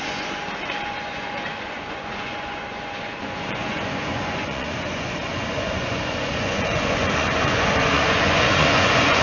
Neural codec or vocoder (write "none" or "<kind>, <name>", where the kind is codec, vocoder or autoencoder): vocoder, Vocos